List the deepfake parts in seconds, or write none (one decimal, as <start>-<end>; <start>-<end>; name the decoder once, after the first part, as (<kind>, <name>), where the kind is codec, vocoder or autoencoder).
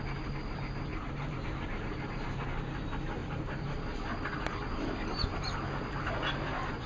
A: 0.9-2.1 (vocoder, BigVGAN v2); 3.2-3.8